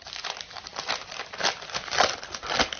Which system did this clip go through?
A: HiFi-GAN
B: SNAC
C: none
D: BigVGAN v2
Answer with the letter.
C